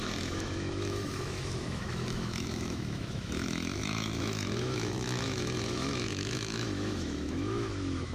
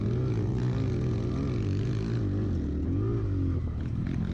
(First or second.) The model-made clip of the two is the first